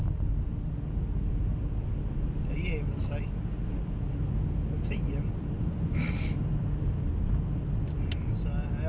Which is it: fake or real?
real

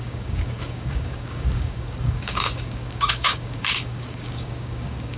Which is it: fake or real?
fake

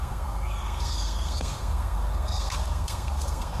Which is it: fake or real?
fake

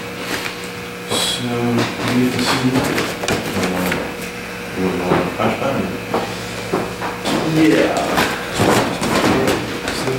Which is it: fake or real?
real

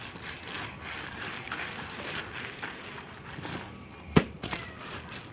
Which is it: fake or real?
real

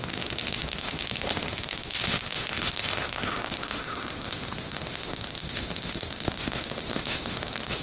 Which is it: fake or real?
fake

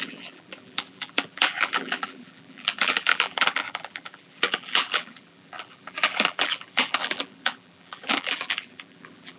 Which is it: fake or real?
fake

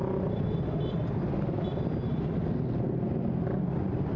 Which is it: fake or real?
real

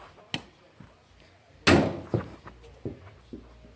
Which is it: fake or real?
real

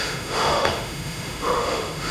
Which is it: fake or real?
fake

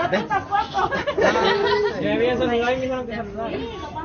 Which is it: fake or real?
real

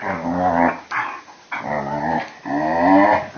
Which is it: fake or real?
real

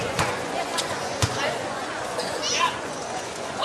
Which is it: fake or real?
fake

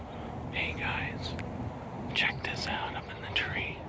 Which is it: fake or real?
real